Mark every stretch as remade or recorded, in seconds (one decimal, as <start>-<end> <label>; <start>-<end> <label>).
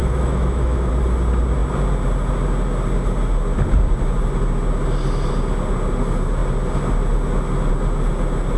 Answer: 0.0-0.9 remade; 0.9-8.6 recorded